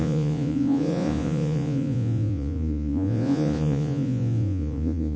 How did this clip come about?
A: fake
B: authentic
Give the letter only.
A